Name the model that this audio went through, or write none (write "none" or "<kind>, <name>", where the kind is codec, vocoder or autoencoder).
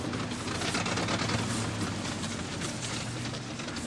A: none